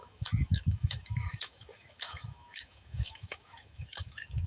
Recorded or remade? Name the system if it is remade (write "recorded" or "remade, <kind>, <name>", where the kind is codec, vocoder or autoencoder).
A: remade, autoencoder, DAC-VAE